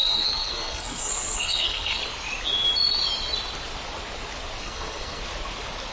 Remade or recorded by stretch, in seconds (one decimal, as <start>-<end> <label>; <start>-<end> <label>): 0.0-2.0 remade; 2.0-4.6 recorded; 4.6-5.2 remade; 5.2-5.9 recorded